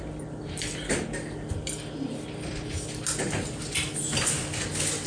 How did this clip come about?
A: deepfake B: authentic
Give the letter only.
B